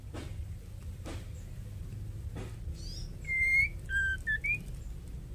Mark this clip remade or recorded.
recorded